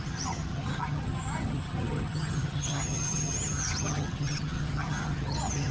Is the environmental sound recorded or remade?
remade